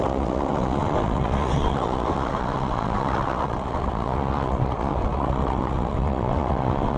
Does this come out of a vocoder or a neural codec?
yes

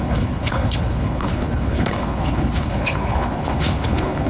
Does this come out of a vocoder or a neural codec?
yes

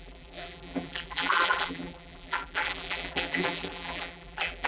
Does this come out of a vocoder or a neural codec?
yes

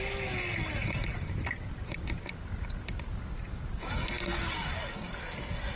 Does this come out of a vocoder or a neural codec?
no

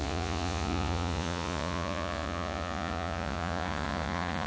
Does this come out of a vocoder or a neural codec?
yes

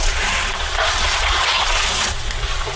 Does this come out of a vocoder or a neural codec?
yes